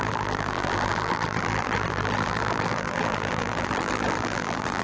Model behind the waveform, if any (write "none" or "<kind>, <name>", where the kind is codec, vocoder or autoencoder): vocoder, BigVGAN v2